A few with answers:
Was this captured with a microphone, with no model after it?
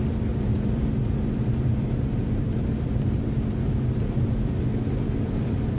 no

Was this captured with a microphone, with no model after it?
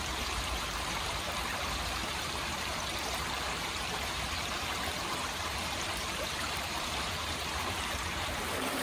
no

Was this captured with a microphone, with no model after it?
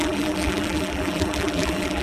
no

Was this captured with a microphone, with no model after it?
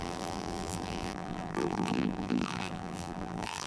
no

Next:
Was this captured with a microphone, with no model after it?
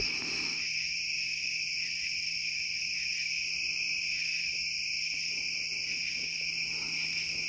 yes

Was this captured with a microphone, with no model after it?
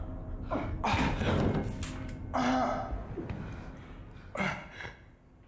yes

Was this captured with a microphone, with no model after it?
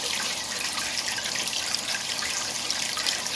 no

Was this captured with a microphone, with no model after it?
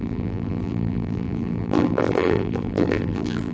no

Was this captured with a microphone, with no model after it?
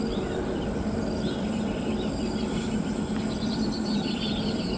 no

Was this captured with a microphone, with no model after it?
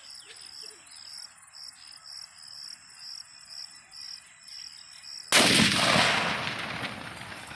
yes